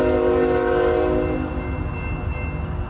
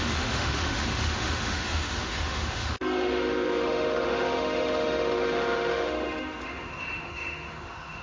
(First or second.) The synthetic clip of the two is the second